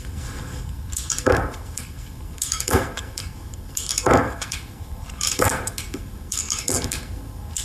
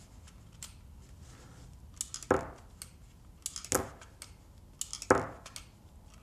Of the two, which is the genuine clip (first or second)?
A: second